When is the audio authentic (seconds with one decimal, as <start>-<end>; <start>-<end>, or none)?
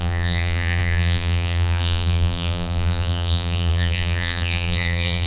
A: none